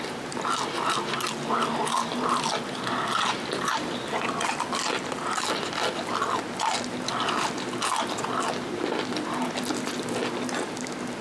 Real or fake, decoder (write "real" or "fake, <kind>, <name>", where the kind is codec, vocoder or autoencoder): real